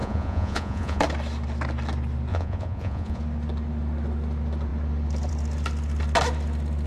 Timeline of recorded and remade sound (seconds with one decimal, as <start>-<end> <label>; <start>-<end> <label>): 0.0-1.0 remade; 1.0-2.3 recorded; 2.3-3.2 remade; 3.2-6.9 recorded